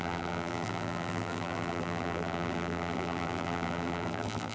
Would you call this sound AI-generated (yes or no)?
yes